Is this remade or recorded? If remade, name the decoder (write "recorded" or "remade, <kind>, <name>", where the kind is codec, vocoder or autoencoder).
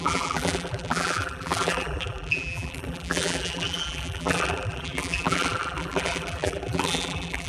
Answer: remade, vocoder, BigVGAN v2